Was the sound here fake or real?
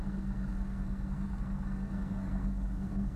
fake